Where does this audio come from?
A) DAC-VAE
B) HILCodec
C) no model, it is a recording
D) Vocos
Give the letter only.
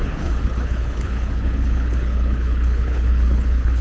B